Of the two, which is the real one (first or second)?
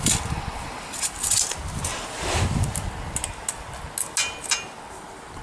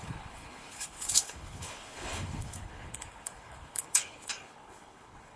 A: first